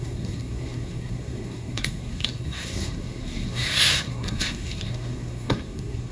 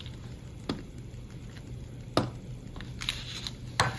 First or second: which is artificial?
first